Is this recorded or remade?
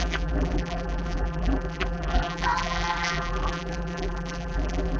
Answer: remade